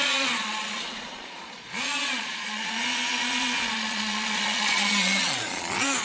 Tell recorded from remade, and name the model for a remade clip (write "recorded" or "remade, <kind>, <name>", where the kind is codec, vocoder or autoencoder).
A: remade, vocoder, Vocos